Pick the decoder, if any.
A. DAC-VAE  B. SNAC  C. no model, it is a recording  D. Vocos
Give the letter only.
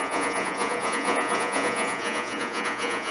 D